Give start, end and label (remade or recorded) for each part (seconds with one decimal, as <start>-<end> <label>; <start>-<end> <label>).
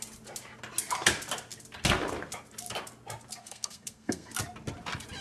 0.0-3.4 recorded; 3.4-4.3 remade; 4.3-5.2 recorded